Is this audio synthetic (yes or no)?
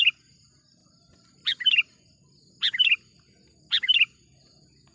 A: no